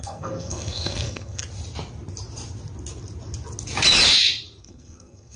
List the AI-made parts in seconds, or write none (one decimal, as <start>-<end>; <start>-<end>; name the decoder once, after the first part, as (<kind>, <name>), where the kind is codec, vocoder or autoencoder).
0.0-1.4 (codec, SNAC); 4.6-5.4